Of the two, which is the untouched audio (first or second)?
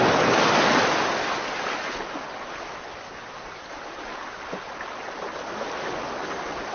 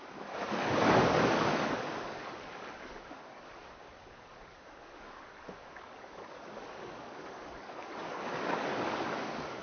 first